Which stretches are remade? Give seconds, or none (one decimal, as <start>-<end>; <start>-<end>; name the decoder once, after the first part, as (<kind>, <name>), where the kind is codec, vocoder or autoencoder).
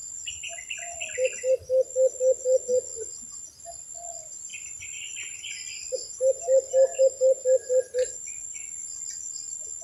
none